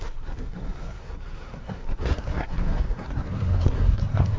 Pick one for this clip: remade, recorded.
remade